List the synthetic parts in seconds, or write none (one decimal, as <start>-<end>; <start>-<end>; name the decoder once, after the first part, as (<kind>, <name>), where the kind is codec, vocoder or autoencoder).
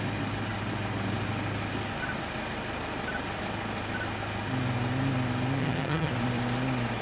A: 5.6-6.1 (vocoder, HiFi-GAN)